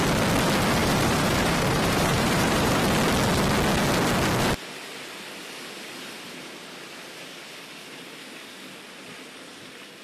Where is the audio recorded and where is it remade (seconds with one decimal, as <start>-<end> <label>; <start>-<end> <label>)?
0.0-0.8 recorded; 0.8-2.8 remade; 2.8-10.0 recorded